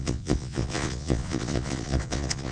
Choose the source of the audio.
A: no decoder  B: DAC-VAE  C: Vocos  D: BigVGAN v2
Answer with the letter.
C